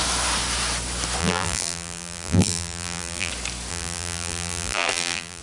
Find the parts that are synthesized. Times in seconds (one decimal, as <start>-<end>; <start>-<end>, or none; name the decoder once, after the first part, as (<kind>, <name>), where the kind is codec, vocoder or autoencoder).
1.2-3.3 (vocoder, BigVGAN v2); 3.7-5.4